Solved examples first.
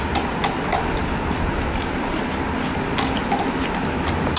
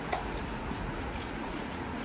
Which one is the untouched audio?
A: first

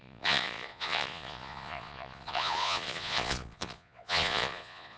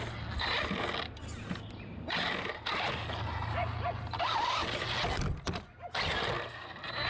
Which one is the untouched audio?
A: second